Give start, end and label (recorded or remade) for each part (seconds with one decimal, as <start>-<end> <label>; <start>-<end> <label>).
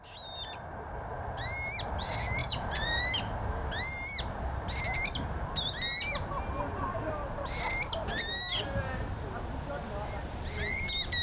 0.0-2.4 recorded; 2.4-3.0 remade; 3.0-11.2 recorded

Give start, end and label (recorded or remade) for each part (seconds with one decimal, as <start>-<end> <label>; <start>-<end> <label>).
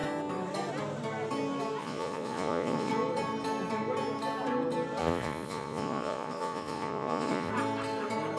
0.0-1.8 recorded; 1.8-2.9 remade; 2.9-5.0 recorded; 5.0-7.5 remade; 7.5-8.4 recorded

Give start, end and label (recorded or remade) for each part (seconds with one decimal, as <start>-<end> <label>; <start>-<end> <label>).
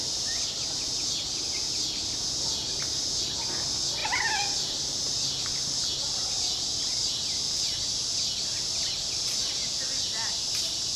0.0-4.0 recorded; 4.0-5.4 remade; 5.4-11.0 recorded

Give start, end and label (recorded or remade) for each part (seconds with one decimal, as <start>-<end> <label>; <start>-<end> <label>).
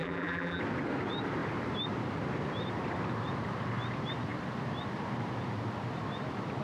0.0-0.6 remade; 0.6-6.6 recorded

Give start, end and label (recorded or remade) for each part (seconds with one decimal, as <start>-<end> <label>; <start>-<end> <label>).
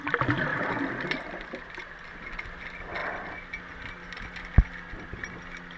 0.0-5.8 recorded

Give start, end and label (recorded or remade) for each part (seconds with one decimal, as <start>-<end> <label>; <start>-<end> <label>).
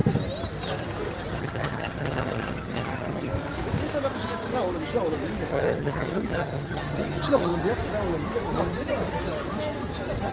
0.0-1.3 recorded; 1.3-3.3 remade; 3.3-5.5 recorded; 5.5-7.5 remade; 7.5-10.3 recorded